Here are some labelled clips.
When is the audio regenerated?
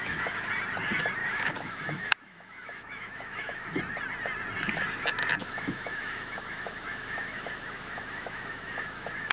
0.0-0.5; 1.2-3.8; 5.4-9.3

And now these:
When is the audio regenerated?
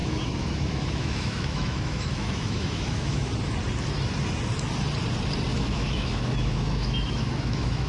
0.0-3.3; 5.5-7.9